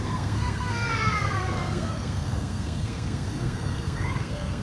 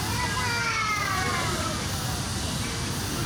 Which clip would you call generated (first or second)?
first